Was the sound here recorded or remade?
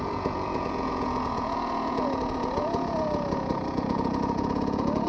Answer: remade